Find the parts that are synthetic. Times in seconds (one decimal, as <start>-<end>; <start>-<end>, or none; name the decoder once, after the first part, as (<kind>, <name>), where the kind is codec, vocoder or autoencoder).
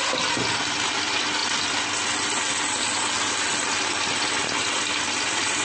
none